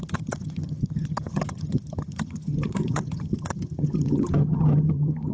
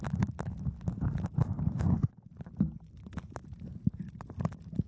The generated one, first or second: first